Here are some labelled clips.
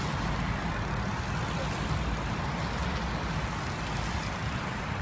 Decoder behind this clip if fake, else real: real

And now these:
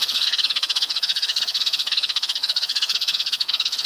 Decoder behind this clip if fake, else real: fake, codec, SNAC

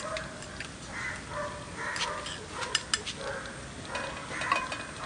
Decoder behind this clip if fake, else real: real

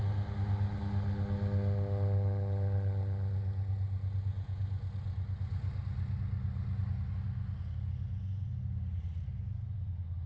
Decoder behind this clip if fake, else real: real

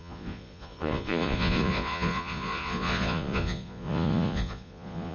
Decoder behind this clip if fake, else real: fake, vocoder, Vocos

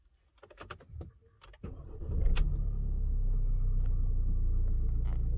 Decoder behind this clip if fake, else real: real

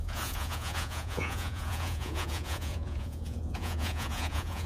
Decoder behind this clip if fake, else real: fake, vocoder, Vocos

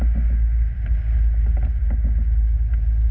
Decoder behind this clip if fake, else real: real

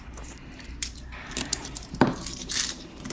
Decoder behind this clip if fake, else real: fake, vocoder, BigVGAN v2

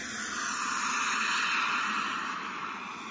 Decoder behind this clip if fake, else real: real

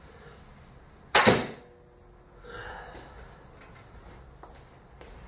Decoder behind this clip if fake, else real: real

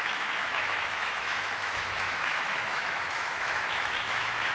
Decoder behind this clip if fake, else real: fake, autoencoder, DAC-VAE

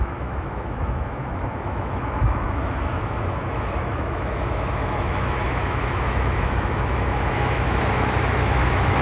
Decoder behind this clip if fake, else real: fake, autoencoder, DAC-VAE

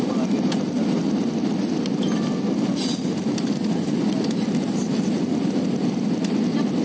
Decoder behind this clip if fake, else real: real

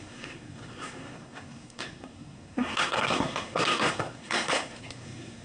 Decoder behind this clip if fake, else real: fake, codec, SNAC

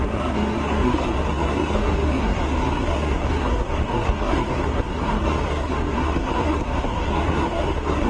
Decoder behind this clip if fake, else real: fake, codec, SNAC